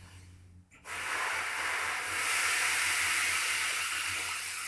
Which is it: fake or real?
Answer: real